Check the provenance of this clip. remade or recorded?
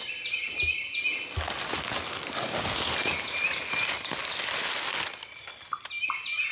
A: recorded